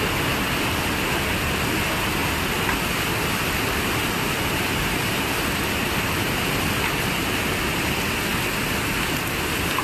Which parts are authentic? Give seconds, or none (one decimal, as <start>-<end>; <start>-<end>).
0.0-9.8